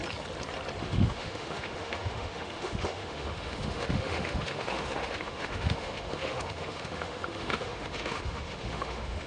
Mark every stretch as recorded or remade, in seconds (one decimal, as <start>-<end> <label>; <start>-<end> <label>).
0.0-0.8 recorded; 0.8-9.3 remade